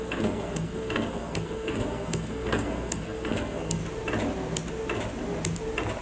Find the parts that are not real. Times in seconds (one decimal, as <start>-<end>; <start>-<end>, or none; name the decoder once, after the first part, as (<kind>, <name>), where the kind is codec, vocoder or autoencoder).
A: 0.0-3.8 (codec, SNAC)

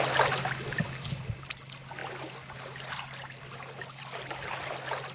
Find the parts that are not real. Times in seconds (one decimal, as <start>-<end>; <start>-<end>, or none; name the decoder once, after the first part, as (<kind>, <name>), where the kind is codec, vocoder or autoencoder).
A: none

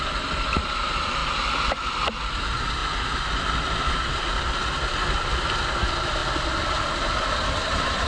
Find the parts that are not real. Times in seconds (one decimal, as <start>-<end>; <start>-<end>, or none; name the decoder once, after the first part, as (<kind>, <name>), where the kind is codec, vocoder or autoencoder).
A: none

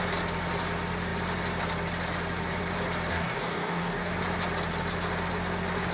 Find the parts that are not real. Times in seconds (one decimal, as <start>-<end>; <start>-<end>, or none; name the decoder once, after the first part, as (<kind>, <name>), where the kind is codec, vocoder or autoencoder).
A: 3.1-4.1 (codec, DAC)

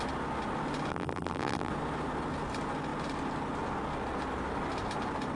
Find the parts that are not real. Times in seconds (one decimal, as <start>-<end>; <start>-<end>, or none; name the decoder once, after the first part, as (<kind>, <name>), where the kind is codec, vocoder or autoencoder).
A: 0.9-1.7 (vocoder, BigVGAN v2)

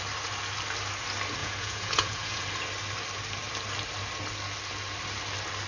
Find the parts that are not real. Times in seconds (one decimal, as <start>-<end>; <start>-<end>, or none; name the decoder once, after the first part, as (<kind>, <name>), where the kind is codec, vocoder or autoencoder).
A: 1.4-2.4 (vocoder, Vocos)

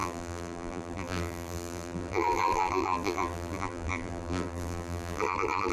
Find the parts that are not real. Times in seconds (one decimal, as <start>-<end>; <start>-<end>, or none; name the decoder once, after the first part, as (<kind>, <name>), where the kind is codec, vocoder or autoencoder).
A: 0.0-5.7 (vocoder, BigVGAN v2)

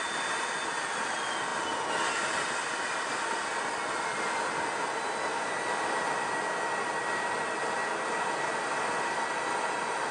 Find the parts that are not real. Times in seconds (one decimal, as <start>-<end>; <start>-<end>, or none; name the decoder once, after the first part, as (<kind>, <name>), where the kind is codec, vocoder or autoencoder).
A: none